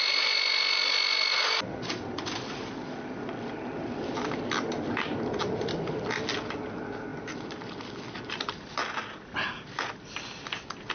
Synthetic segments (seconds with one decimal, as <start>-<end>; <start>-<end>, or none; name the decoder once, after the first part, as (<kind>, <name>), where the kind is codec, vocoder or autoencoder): none